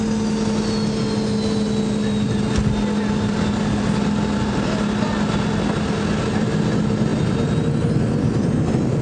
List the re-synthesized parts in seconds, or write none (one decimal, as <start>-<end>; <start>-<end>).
none